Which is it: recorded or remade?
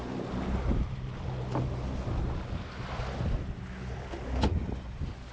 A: recorded